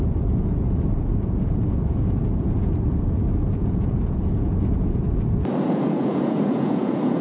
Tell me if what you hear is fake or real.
fake